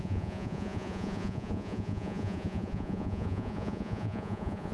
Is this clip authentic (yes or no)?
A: no